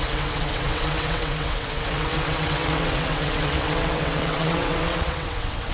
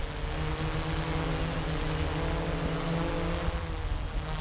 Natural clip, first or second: second